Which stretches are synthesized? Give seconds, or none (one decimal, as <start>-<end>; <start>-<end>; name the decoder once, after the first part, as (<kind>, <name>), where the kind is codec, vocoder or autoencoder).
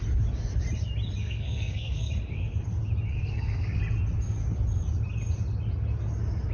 1.2-2.1 (codec, SNAC); 3.1-3.8